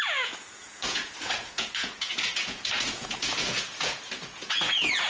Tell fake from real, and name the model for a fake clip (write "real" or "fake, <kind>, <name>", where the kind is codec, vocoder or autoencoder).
fake, vocoder, Vocos